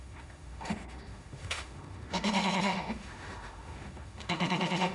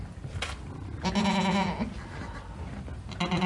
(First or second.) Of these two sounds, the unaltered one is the second